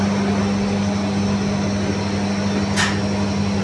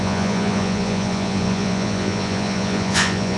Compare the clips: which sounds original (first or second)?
first